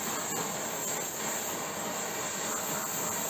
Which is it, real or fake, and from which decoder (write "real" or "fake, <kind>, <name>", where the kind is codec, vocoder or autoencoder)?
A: real